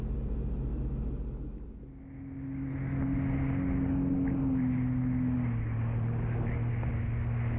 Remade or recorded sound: recorded